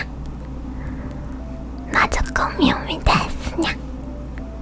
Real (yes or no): yes